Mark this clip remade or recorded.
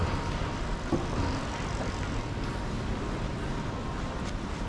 recorded